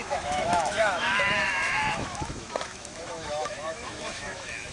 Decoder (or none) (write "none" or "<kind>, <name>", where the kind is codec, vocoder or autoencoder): autoencoder, DAC-VAE